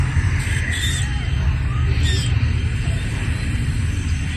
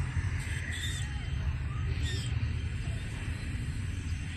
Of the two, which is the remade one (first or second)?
second